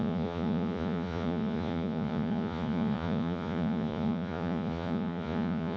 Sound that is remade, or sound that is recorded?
remade